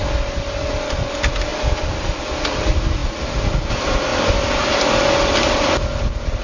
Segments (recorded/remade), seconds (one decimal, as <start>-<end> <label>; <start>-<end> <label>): 0.0-1.5 recorded; 1.5-2.2 remade; 2.2-4.1 recorded; 4.1-4.7 remade; 4.7-6.4 recorded